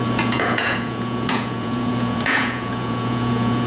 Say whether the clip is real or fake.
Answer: fake